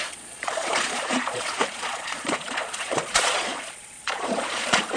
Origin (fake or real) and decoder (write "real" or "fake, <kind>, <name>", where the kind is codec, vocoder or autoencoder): fake, vocoder, Vocos